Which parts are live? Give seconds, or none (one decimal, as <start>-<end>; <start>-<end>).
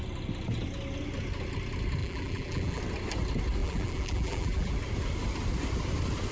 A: 0.0-2.0; 2.8-3.6; 4.7-6.3